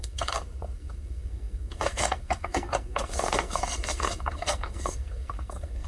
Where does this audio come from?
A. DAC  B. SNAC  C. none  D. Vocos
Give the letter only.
B